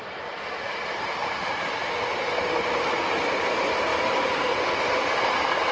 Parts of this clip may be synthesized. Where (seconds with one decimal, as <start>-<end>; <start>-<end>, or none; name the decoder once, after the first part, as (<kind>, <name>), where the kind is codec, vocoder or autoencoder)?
0.0-1.8 (vocoder, BigVGAN v2); 3.3-3.9